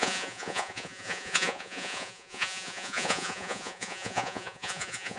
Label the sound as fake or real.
fake